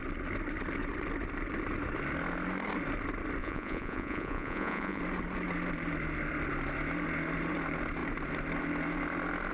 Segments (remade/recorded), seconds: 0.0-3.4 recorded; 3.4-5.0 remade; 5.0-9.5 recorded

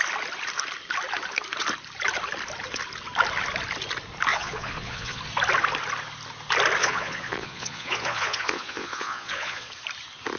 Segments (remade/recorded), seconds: 0.0-4.3 recorded; 4.3-5.2 remade; 5.2-6.8 recorded; 6.8-9.7 remade; 9.7-10.4 recorded

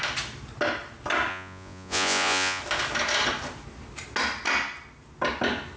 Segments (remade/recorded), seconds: 0.0-1.3 recorded; 1.3-2.6 remade; 2.6-5.8 recorded